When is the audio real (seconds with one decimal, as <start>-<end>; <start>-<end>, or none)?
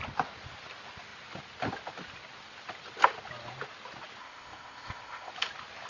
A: 0.0-4.2; 5.3-5.9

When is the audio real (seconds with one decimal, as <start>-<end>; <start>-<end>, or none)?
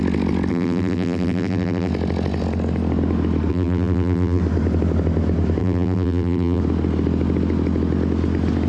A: 0.0-0.5; 1.9-3.5; 4.4-5.6; 6.6-8.7